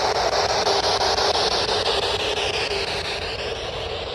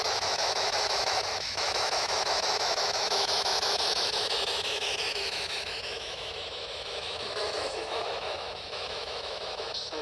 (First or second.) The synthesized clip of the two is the second